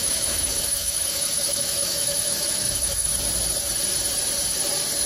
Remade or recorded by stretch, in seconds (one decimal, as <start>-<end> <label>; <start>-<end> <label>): 0.0-3.1 remade; 3.1-5.1 recorded